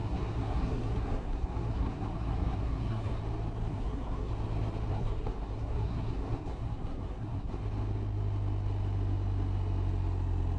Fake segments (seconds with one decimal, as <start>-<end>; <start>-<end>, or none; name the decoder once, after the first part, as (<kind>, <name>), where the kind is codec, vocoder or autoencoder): 0.0-3.2 (codec, SNAC); 3.7-4.3; 4.9-7.6